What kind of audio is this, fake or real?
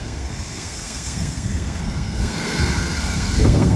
fake